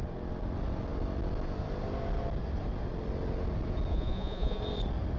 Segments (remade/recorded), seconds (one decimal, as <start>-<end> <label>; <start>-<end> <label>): 0.0-3.9 recorded; 3.9-4.6 remade; 4.6-5.2 recorded